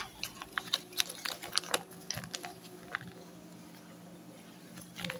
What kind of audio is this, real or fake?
real